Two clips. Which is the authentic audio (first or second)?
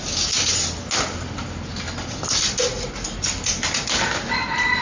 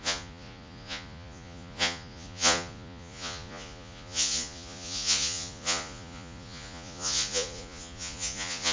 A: first